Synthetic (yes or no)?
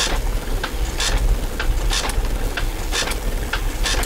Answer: no